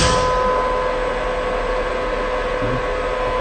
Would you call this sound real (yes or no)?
yes